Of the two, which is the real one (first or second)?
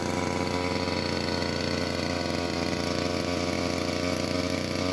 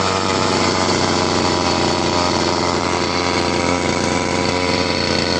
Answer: first